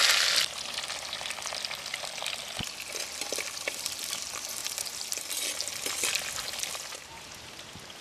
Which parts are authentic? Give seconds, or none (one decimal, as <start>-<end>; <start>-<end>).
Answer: 0.0-8.0

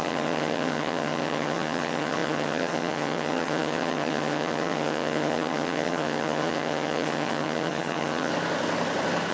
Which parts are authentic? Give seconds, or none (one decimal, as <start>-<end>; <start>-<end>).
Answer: 8.3-9.3

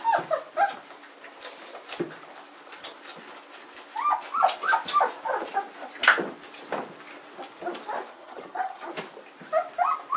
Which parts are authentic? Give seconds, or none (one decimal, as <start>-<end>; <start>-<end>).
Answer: 0.0-8.1; 8.9-10.2

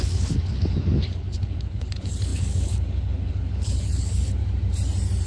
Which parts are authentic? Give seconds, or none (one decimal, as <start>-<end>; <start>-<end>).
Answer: 4.4-5.3

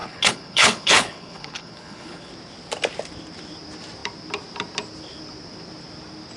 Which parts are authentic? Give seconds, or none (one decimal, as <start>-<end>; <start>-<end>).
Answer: 2.3-6.4

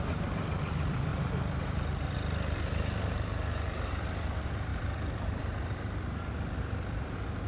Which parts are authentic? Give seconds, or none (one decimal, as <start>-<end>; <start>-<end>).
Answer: none